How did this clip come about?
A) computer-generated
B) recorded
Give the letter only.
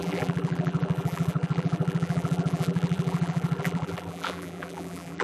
A